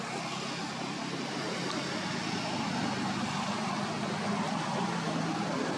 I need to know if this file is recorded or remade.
recorded